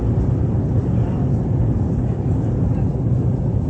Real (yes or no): yes